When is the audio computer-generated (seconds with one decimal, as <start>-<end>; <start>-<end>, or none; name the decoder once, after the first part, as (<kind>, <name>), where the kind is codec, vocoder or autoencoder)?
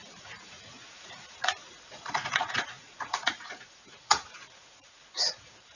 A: 0.0-5.8 (vocoder, Vocos)